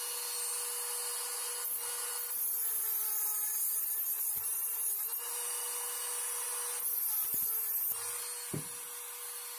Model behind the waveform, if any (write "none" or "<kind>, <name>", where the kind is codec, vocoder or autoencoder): none